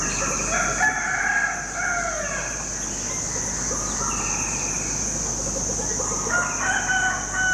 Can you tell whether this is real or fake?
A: real